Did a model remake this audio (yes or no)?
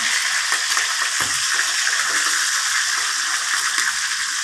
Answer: no